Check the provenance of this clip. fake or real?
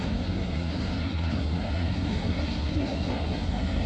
fake